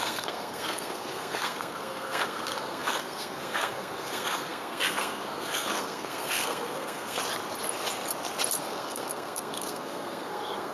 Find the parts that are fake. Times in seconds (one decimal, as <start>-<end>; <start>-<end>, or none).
0.0-7.2; 8.6-10.7